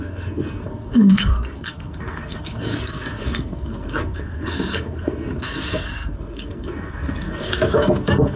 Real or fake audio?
fake